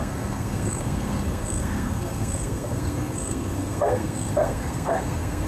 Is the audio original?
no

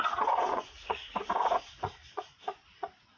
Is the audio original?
no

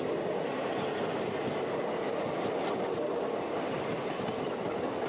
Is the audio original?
yes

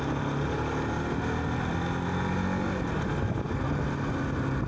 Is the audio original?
yes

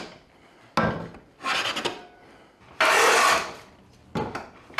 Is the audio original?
yes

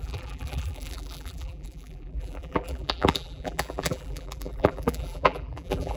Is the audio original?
no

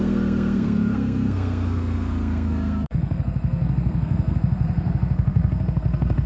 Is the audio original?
no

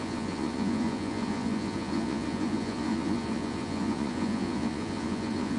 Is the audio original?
no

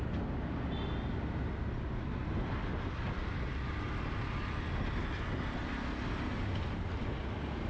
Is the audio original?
yes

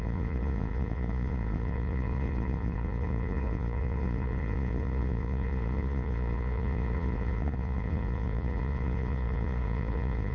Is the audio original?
no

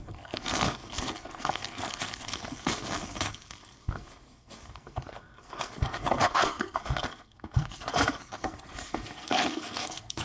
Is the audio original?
no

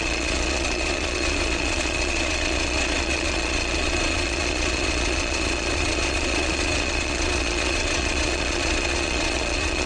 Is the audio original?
no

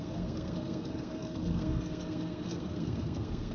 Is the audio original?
no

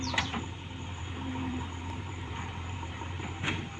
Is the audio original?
no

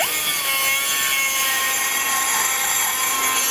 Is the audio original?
yes